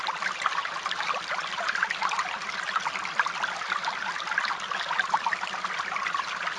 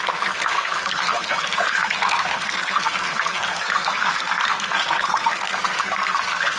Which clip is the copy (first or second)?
second